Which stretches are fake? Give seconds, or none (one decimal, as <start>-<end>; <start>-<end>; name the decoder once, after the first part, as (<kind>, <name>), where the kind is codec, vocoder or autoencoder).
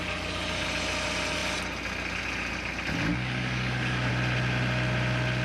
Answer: 3.1-4.1 (codec, DAC)